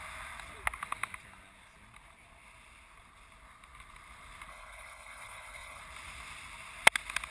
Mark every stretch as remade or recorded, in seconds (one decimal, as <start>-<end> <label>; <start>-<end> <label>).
0.0-4.5 recorded; 4.5-5.8 remade; 5.8-7.3 recorded